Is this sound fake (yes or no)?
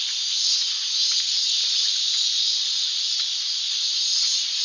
no